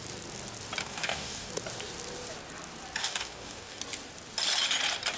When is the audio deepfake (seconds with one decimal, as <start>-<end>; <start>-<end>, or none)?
0.8-1.5; 3.0-3.8